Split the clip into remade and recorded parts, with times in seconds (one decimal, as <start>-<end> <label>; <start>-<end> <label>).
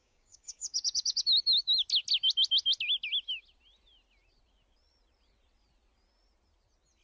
0.0-1.2 remade; 1.2-7.0 recorded